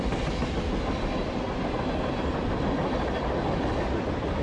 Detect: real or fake real